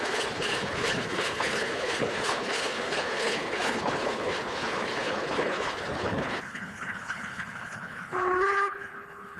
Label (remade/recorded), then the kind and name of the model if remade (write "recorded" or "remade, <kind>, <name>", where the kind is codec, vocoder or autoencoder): remade, codec, HILCodec